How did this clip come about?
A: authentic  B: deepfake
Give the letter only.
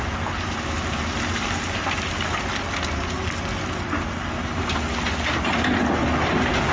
A